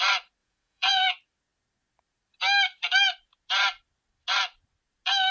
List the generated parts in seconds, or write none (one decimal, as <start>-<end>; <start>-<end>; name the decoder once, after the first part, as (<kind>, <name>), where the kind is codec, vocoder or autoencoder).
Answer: 0.4-1.1 (vocoder, Vocos)